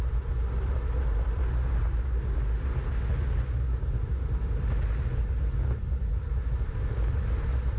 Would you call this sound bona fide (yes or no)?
yes